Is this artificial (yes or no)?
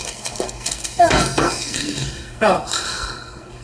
yes